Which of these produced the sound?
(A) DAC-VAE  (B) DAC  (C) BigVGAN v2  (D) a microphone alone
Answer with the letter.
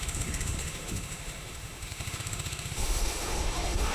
A